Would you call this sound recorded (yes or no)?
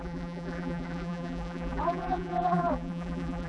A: no